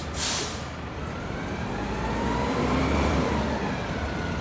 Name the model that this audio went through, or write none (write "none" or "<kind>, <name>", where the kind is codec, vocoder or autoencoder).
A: vocoder, BigVGAN v2